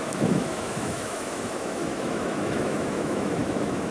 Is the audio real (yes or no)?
no